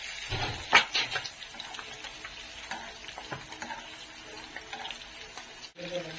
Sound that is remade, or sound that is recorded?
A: recorded